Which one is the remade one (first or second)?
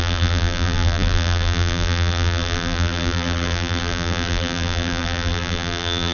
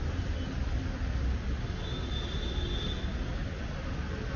first